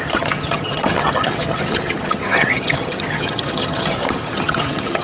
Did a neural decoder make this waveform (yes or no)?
yes